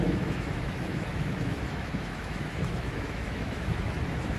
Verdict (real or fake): fake